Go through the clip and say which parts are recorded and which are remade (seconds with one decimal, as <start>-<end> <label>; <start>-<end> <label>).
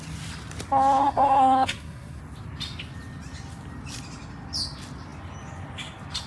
0.0-1.0 recorded; 1.0-2.2 remade; 2.2-6.3 recorded